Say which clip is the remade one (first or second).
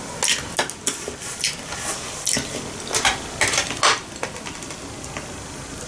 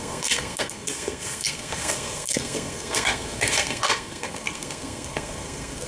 second